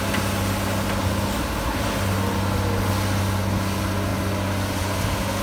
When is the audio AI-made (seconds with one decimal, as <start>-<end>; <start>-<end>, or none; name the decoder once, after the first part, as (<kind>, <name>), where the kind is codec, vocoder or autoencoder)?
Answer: none